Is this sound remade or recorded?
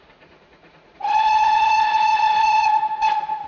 remade